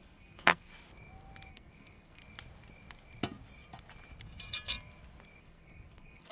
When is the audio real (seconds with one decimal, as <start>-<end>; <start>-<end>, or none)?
0.7-1.5; 2.2-5.4